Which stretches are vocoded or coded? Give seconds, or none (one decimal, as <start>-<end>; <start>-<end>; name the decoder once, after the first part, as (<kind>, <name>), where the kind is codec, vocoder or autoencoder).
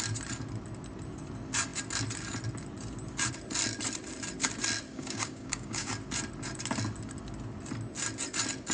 4.9-5.9 (codec, DAC)